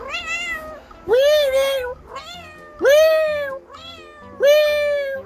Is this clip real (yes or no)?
yes